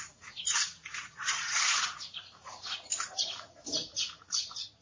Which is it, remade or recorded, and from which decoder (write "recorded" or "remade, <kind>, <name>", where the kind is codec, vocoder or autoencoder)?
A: remade, vocoder, Vocos